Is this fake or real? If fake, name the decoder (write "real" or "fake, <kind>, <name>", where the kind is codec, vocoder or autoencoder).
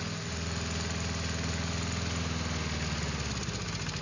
real